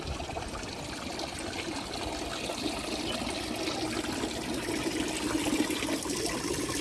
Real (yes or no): yes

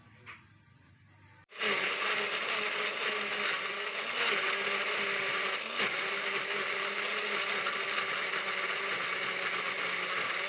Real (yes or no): yes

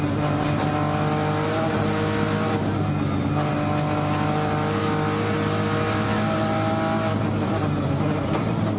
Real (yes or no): yes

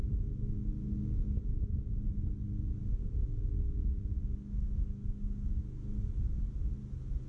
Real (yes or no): yes